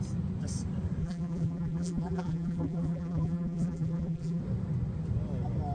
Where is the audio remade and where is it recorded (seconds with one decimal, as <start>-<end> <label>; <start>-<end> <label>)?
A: 0.0-1.0 recorded; 1.0-4.4 remade; 4.4-5.7 recorded